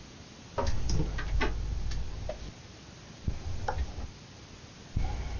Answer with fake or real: real